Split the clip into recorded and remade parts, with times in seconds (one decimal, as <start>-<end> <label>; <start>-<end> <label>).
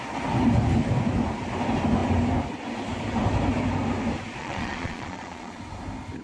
0.0-4.4 recorded; 4.4-5.6 remade; 5.6-6.2 recorded